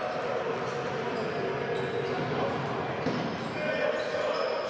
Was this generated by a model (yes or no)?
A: no